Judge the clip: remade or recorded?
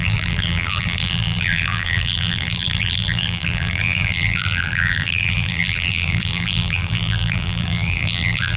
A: remade